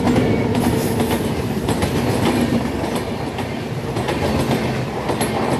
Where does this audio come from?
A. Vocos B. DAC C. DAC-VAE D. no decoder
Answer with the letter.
D